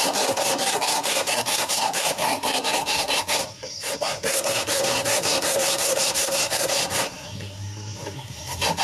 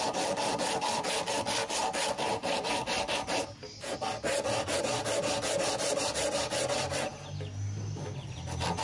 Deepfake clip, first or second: first